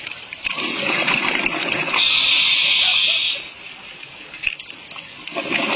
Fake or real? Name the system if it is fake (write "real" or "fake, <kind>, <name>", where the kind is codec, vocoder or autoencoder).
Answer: real